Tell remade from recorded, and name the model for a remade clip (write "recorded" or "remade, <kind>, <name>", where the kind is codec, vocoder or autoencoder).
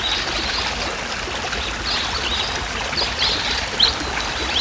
recorded